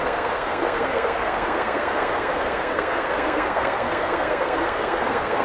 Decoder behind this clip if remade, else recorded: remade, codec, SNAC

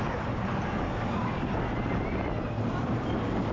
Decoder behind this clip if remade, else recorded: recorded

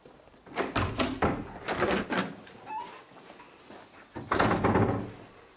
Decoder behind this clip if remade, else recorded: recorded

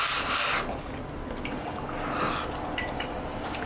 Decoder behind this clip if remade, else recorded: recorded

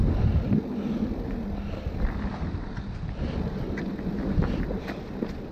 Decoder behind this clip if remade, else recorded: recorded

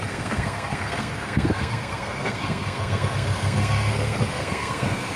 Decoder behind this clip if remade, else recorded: remade, codec, SNAC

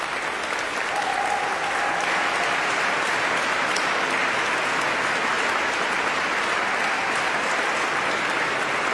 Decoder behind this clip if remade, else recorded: recorded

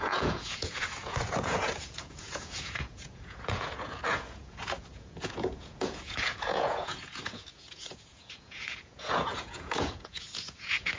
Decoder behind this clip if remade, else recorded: remade, vocoder, Vocos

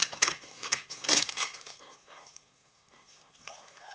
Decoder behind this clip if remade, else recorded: remade, codec, SNAC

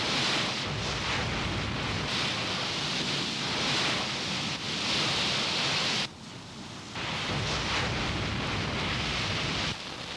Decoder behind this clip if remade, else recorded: recorded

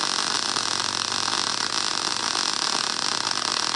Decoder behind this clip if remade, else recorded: recorded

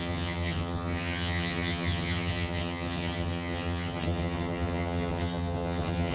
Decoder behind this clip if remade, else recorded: remade, vocoder, HiFi-GAN